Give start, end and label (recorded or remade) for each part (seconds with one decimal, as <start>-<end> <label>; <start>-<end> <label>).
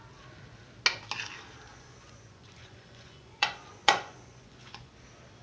0.0-1.7 recorded; 1.7-4.9 remade; 4.9-5.4 recorded